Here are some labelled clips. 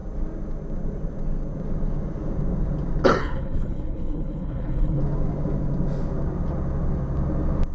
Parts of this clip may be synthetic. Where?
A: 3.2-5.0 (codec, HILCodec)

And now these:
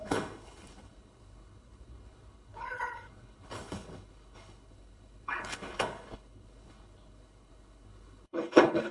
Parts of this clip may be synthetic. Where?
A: 0.0-8.9 (codec, HILCodec)